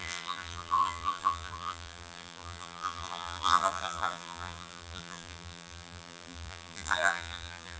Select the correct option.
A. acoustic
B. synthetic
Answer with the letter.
B